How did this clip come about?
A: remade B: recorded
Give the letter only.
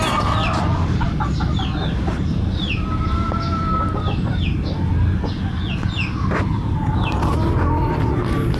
B